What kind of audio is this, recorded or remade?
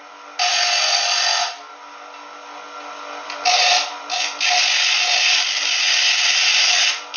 recorded